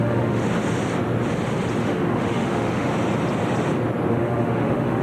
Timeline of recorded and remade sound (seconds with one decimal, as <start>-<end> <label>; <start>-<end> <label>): 0.0-0.4 remade; 0.4-1.8 recorded; 1.8-2.9 remade; 2.9-4.1 recorded; 4.1-5.0 remade